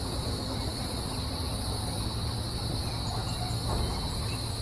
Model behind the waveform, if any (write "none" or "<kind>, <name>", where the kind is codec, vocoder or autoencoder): none